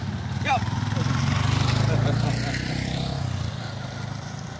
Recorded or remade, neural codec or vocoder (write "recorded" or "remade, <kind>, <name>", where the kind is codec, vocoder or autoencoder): recorded